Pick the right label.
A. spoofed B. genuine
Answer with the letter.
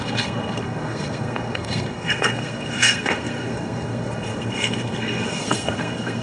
A